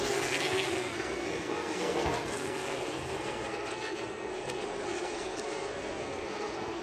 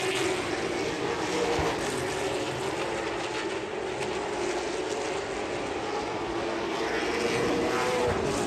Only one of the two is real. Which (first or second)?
second